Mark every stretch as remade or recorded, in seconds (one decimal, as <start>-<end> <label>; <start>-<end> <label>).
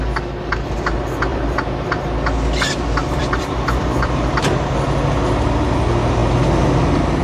0.0-1.3 recorded; 1.3-1.9 remade; 1.9-3.0 recorded; 3.0-5.0 remade; 5.0-7.2 recorded